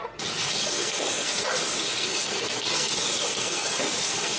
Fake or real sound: fake